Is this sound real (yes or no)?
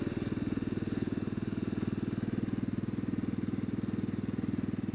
yes